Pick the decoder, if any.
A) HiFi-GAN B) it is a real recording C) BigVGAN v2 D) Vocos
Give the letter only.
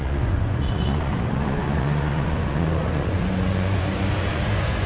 D